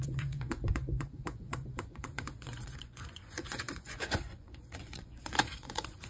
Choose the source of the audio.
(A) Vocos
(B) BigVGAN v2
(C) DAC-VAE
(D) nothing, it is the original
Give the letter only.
A